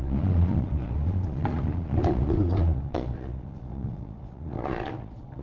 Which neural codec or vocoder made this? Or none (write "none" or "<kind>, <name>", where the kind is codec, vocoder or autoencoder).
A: vocoder, Vocos